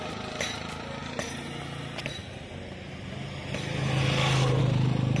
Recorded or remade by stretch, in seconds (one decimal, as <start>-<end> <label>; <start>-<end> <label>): 0.0-5.2 recorded